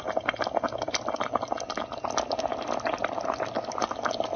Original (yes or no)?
no